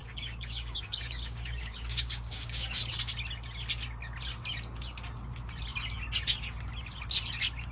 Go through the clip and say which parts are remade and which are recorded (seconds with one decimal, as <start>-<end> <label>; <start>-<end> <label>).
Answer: 0.0-2.8 remade; 2.8-7.7 recorded